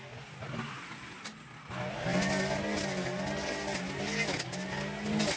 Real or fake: real